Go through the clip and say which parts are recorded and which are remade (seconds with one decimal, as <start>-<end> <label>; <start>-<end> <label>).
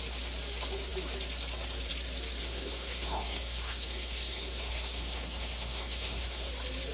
0.0-2.4 recorded; 2.4-6.5 remade; 6.5-6.9 recorded